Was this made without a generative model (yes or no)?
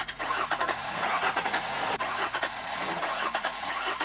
no